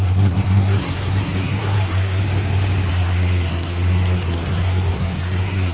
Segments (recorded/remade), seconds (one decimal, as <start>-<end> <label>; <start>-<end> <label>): 0.0-2.2 remade; 2.2-2.9 recorded; 2.9-5.7 remade